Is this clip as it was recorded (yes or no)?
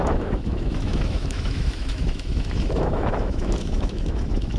no